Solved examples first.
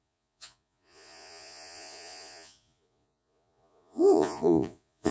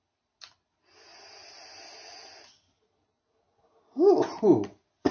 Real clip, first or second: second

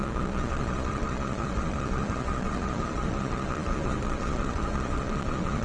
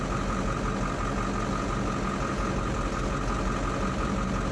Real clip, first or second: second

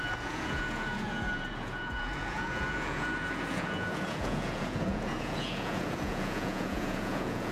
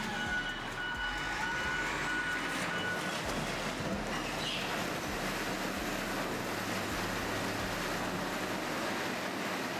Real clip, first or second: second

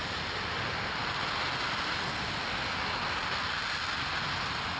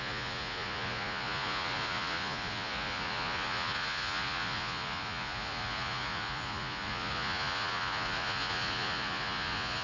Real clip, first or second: first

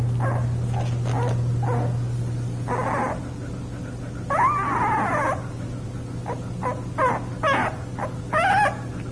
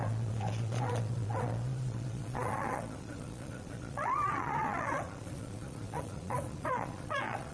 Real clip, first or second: first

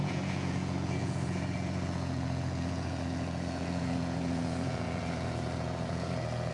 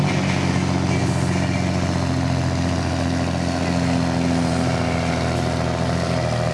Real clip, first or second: second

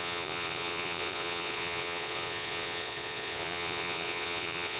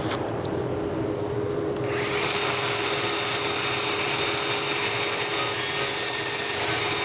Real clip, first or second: second